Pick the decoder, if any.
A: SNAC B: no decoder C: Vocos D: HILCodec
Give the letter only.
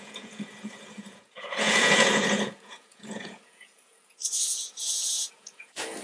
C